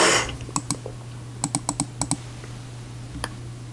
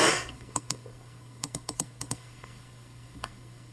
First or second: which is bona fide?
first